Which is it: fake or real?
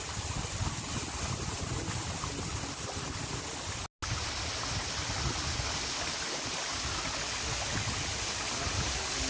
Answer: real